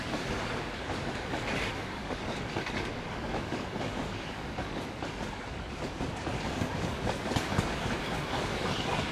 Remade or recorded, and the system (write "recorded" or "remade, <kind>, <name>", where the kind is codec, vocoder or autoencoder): remade, codec, DAC